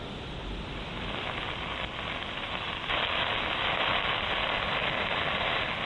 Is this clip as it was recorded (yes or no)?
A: yes